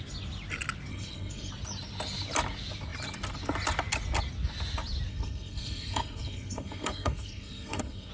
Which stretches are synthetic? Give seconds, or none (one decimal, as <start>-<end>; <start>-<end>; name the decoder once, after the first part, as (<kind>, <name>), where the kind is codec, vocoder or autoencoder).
0.9-1.5 (codec, SNAC); 5.1-8.1